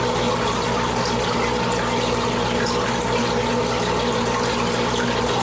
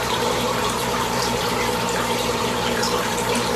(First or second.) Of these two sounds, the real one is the first